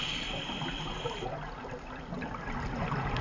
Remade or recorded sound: recorded